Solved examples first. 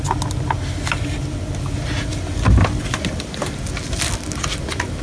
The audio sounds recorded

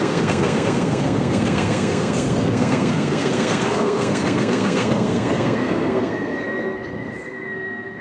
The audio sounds remade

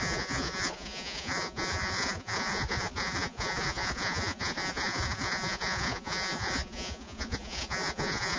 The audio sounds remade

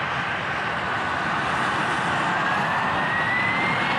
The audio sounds recorded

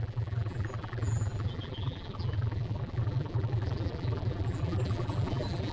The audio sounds remade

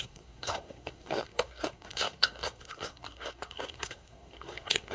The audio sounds remade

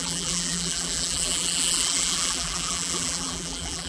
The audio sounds remade